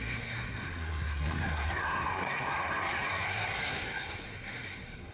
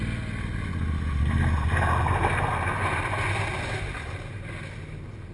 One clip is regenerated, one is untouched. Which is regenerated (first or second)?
first